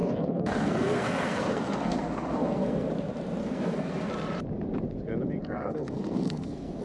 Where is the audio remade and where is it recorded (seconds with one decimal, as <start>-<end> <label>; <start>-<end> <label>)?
0.0-2.9 remade; 2.9-3.4 recorded; 3.4-4.1 remade; 4.1-5.4 recorded; 5.4-6.8 remade